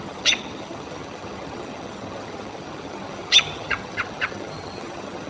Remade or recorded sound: remade